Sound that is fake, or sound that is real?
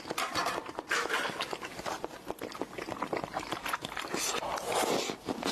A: real